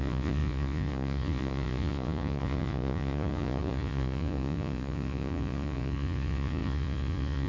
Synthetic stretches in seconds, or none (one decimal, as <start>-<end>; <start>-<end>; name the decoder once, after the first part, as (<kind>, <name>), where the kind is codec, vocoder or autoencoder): 0.0-7.5 (vocoder, Vocos)